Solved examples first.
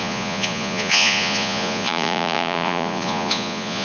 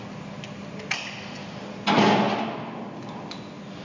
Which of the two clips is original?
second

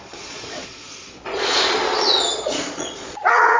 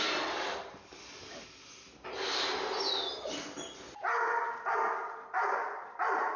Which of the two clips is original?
second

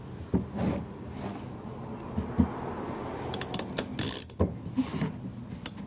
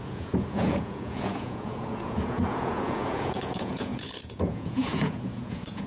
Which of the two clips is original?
first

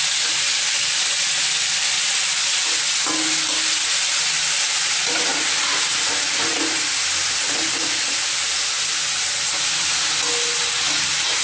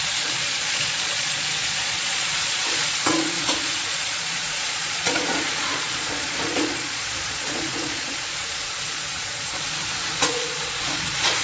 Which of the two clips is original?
first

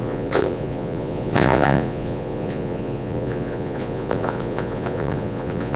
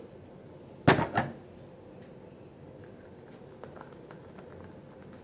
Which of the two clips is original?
second